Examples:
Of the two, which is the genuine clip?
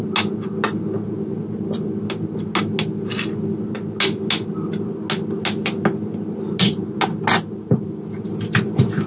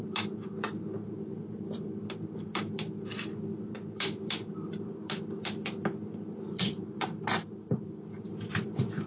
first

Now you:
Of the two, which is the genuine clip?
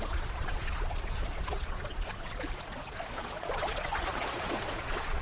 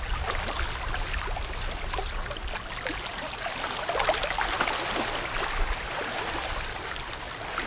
second